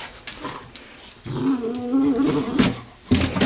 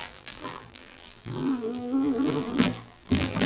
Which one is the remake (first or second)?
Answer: second